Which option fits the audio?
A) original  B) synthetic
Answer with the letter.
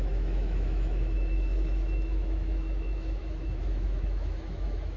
B